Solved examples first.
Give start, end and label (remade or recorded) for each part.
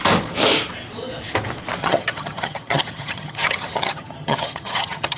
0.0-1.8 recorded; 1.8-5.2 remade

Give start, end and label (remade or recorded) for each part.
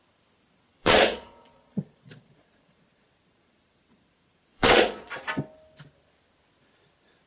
0.0-0.7 recorded; 0.7-5.1 remade; 5.1-7.3 recorded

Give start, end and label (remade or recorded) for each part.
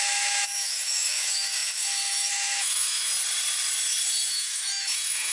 0.0-3.1 remade; 3.1-4.3 recorded; 4.3-5.3 remade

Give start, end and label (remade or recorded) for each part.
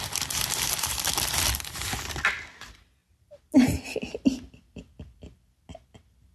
0.0-6.3 recorded